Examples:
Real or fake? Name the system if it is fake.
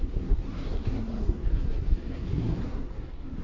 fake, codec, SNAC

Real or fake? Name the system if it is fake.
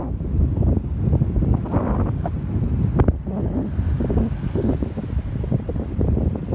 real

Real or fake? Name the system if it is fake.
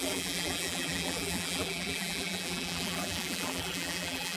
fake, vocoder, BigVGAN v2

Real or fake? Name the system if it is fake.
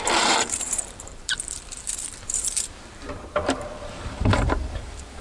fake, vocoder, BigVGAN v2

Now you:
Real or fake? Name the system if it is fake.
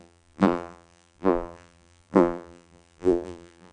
fake, vocoder, BigVGAN v2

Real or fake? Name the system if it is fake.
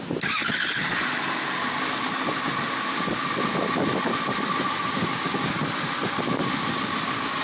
real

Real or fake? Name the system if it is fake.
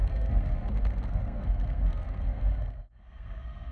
fake, codec, SNAC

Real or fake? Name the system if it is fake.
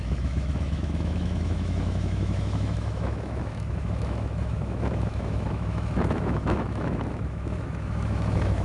fake, autoencoder, DAC-VAE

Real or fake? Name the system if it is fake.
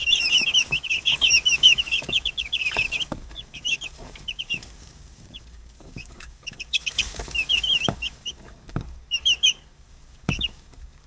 fake, codec, DAC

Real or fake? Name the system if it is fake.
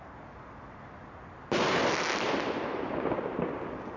real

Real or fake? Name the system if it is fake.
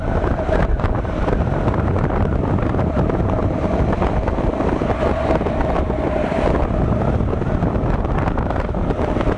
fake, vocoder, BigVGAN v2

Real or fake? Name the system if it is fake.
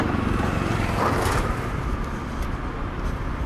real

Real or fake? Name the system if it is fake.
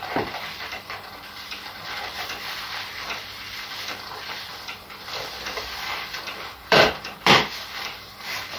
fake, vocoder, BigVGAN v2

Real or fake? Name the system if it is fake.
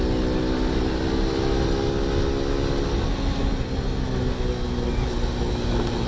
real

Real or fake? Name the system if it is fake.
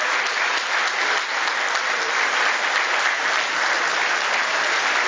real